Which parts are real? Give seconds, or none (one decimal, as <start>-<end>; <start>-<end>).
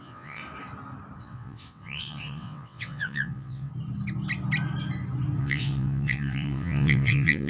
0.4-1.2; 3.7-5.4